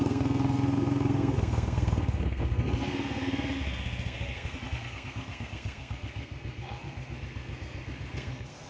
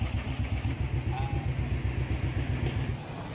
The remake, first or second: first